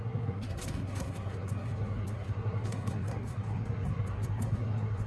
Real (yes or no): no